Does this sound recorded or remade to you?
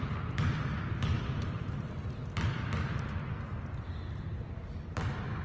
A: recorded